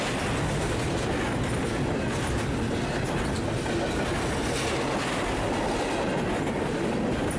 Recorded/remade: recorded